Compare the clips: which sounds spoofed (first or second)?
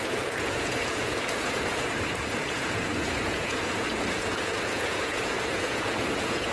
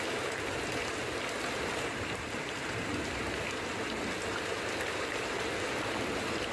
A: first